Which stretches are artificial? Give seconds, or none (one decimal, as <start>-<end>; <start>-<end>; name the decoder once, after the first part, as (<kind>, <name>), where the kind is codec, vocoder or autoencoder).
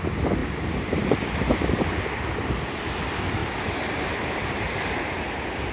3.4-4.7 (vocoder, BigVGAN v2)